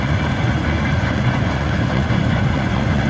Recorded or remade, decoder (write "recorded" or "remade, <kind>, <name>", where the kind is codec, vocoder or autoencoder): remade, vocoder, Vocos